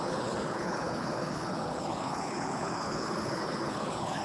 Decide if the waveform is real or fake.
fake